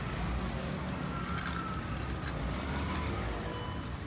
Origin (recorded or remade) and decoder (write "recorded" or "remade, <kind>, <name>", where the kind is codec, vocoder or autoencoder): recorded